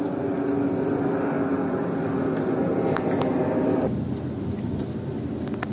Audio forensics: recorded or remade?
recorded